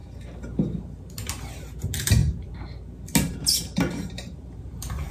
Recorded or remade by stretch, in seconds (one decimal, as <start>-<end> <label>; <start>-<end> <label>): 0.0-1.8 recorded; 1.8-2.2 remade; 2.2-3.3 recorded; 3.3-5.1 remade